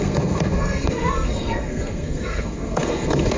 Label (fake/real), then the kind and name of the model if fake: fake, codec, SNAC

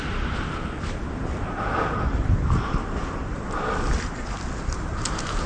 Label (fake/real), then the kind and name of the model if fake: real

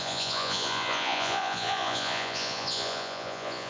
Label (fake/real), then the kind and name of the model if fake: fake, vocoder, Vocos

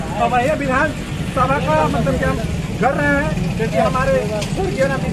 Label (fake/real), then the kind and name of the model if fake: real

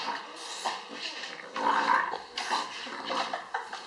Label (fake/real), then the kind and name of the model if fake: real